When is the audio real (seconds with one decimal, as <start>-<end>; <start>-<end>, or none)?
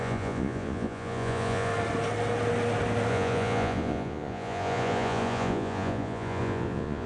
1.7-3.1